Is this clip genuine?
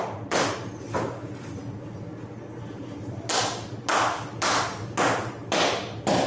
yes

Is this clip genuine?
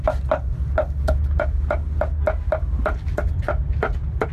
yes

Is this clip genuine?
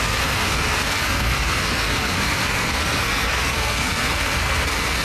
no